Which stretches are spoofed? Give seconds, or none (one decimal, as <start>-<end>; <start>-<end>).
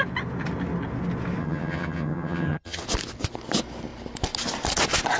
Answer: 1.4-2.8